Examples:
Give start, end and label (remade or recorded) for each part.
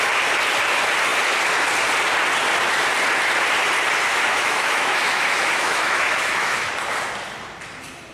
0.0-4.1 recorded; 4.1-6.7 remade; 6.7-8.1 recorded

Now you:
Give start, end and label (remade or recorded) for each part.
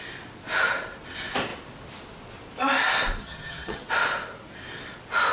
0.0-3.2 recorded; 3.2-3.9 remade; 3.9-5.3 recorded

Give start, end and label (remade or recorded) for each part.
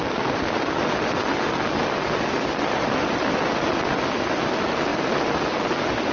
0.0-6.1 recorded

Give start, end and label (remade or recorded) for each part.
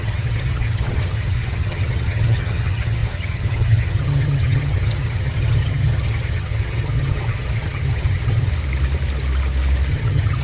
0.0-8.5 remade; 8.5-9.9 recorded; 9.9-10.4 remade